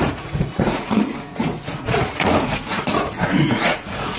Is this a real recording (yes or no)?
no